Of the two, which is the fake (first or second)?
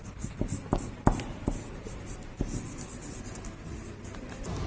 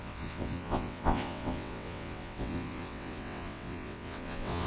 second